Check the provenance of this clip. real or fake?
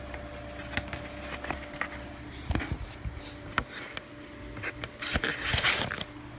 real